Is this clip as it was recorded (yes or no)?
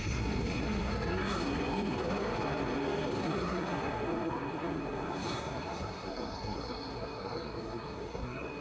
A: no